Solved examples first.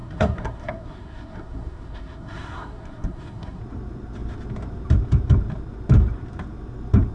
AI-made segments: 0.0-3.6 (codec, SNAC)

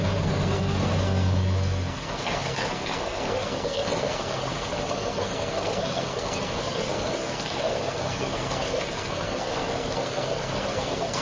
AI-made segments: 0.0-11.2 (codec, SNAC)